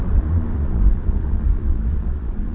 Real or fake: fake